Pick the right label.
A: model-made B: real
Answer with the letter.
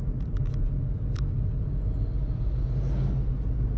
B